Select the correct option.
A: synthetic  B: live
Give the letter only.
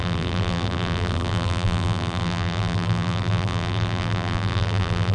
A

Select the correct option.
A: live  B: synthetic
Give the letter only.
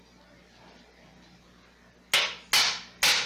A